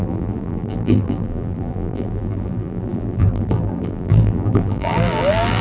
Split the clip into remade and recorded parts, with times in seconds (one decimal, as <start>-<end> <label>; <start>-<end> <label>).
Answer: 0.0-5.6 remade

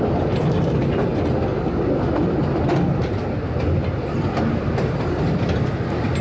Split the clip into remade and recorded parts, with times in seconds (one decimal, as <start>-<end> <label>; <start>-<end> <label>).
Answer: 0.0-1.1 remade; 1.1-2.3 recorded; 2.3-3.8 remade; 3.8-4.6 recorded; 4.6-6.2 remade

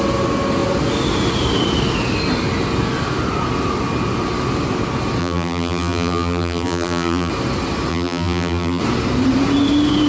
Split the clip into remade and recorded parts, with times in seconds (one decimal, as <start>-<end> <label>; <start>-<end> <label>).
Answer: 0.0-5.2 recorded; 5.2-7.3 remade; 7.3-7.9 recorded; 7.9-8.8 remade; 8.8-10.1 recorded

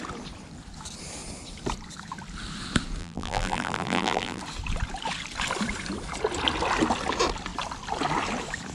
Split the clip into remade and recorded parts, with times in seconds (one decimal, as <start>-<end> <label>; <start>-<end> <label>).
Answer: 0.0-3.0 recorded; 3.0-4.4 remade; 4.4-8.7 recorded

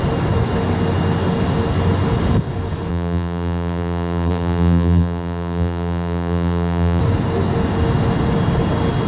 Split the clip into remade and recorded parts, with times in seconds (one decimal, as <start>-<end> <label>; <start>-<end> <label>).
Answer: 0.0-2.9 recorded; 2.9-7.0 remade; 7.0-9.1 recorded

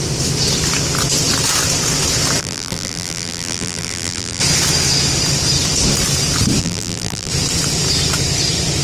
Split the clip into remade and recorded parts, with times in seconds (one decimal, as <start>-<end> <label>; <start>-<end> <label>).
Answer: 0.0-2.4 recorded; 2.4-4.4 remade; 4.4-6.6 recorded; 6.6-7.3 remade; 7.3-8.8 recorded

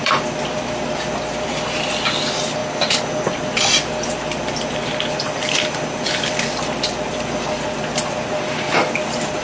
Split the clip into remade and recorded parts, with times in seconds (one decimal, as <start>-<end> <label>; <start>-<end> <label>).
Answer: 0.0-2.6 remade; 2.6-3.3 recorded; 3.3-9.4 remade